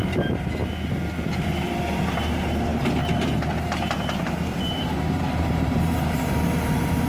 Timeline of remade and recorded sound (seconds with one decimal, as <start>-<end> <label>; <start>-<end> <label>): 0.0-0.6 remade; 0.6-1.3 recorded; 1.3-7.1 remade